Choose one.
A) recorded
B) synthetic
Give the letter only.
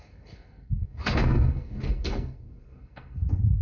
B